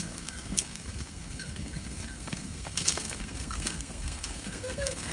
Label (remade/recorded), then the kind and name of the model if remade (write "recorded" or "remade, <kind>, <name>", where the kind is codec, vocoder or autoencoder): remade, codec, SNAC